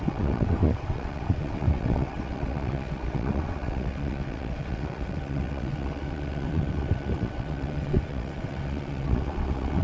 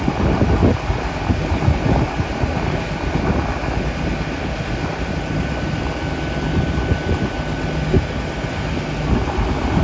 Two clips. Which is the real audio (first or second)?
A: second